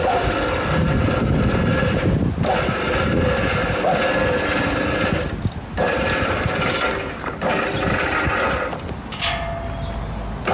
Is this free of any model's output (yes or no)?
yes